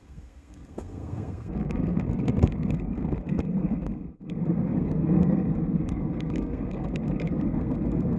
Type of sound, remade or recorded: remade